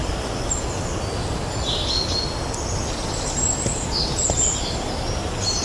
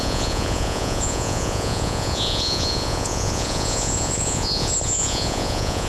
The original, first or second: first